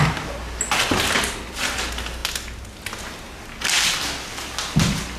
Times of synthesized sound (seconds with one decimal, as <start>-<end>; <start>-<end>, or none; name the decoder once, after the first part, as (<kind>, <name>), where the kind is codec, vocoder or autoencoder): none